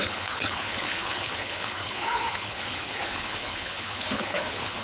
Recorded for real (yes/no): no